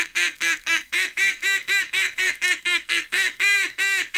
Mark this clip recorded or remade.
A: remade